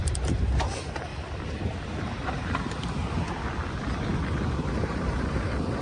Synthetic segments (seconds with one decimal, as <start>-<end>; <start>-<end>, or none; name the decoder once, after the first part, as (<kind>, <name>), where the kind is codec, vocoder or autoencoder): 0.0-1.1 (vocoder, BigVGAN v2); 2.0-2.4; 4.7-5.8